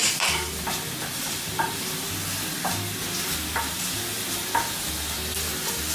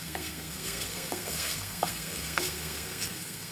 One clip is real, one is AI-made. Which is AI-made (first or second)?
second